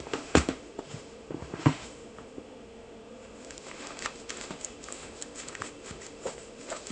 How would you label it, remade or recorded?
remade